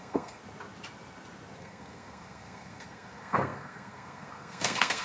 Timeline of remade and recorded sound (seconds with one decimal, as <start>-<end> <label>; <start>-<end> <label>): 0.0-0.4 remade; 0.4-1.6 recorded; 1.6-5.0 remade